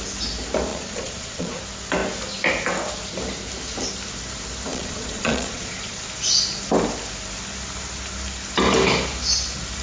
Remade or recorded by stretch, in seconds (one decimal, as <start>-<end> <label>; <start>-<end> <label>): 0.0-0.7 recorded; 0.7-1.6 remade; 1.6-4.7 recorded; 4.7-6.0 remade; 6.0-9.8 recorded